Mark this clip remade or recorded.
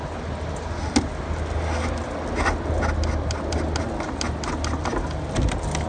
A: recorded